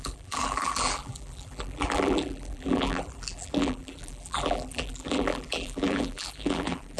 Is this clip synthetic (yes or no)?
yes